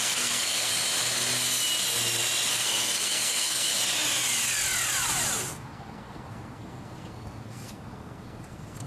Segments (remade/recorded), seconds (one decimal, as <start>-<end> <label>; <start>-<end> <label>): 0.0-0.7 remade; 0.7-2.5 recorded; 2.5-3.7 remade; 3.7-5.5 recorded; 5.5-8.9 remade